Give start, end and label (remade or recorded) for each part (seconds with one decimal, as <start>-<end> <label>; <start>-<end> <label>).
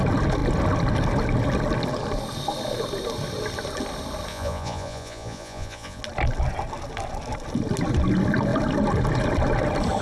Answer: 0.0-4.3 recorded; 4.3-6.0 remade; 6.0-10.0 recorded